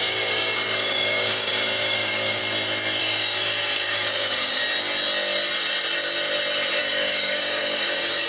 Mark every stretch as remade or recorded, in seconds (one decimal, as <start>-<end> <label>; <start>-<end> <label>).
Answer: 0.0-2.4 remade; 2.4-3.0 recorded; 3.0-4.6 remade; 4.6-6.8 recorded; 6.8-8.3 remade

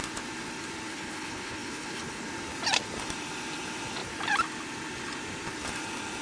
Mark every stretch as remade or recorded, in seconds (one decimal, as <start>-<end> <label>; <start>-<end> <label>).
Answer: 0.0-0.9 recorded; 0.9-2.3 remade; 2.3-6.2 recorded

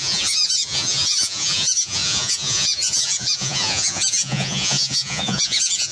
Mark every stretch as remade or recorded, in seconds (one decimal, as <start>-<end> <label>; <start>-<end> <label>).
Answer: 0.0-5.9 remade

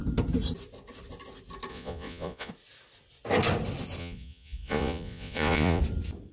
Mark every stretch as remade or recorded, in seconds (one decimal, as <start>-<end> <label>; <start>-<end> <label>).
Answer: 0.0-1.7 recorded; 1.7-2.5 remade; 2.5-4.0 recorded; 4.0-5.8 remade; 5.8-6.3 recorded

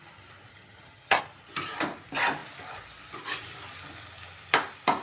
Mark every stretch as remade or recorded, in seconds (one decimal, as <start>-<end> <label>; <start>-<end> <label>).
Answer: 0.0-0.5 recorded; 0.5-1.2 remade; 1.2-5.0 recorded

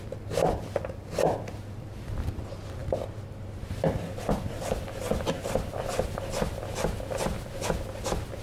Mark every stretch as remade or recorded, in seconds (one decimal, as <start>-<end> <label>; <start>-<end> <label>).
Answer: 0.0-8.4 recorded